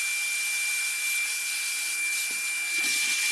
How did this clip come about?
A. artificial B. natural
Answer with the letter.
B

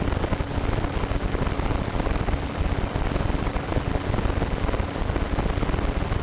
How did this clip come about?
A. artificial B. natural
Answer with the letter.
B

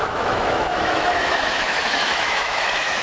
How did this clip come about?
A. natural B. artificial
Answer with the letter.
B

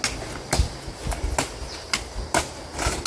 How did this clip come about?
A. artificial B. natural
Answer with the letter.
B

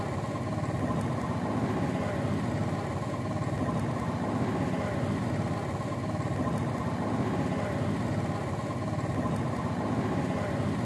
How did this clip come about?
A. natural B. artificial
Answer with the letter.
A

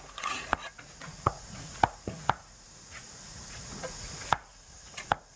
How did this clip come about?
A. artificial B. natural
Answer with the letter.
A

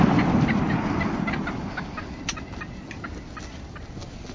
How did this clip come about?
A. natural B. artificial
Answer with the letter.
A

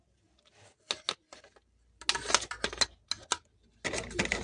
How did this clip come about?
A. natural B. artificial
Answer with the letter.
A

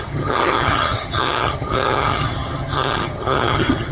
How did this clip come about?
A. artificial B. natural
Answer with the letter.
A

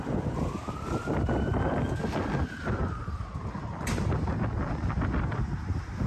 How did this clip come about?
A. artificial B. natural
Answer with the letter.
B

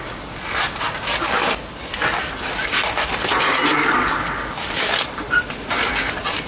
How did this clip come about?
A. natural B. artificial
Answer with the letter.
A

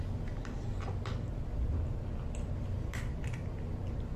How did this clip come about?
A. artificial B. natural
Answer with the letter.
B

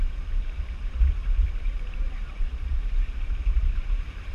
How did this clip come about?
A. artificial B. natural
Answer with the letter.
A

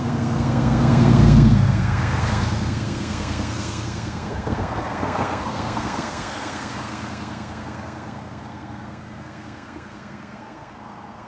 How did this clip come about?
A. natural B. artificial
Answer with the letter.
B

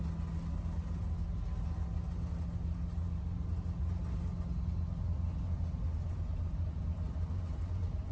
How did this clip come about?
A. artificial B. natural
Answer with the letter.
B